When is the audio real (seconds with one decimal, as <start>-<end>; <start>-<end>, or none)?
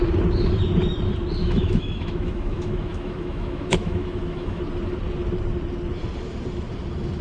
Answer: 0.0-1.4; 4.6-7.2